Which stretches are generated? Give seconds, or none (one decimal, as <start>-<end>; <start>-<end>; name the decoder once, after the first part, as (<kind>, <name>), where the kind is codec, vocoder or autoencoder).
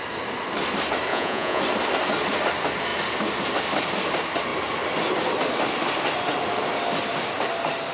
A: 1.1-1.6 (vocoder, Vocos)